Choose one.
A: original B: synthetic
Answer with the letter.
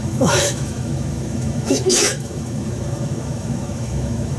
B